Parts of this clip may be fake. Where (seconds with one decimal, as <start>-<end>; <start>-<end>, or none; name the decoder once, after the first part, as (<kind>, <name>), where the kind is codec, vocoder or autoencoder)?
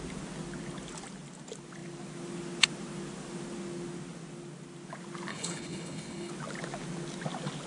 5.3-6.3 (codec, HILCodec)